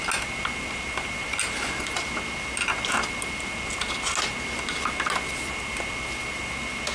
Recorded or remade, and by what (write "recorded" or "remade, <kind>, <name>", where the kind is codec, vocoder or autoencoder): recorded